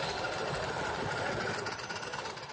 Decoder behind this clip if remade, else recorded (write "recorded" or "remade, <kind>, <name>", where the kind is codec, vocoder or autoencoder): recorded